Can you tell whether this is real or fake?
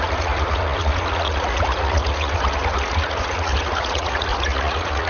fake